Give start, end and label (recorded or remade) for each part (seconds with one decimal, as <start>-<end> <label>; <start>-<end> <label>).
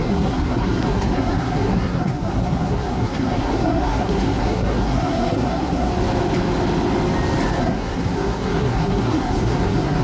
0.0-5.9 remade; 5.9-7.6 recorded; 7.6-10.0 remade